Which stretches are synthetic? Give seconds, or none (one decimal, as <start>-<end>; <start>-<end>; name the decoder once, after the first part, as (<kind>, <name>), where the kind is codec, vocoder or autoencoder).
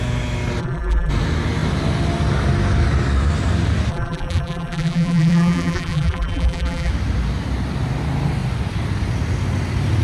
0.6-1.1 (vocoder, BigVGAN v2); 3.9-6.9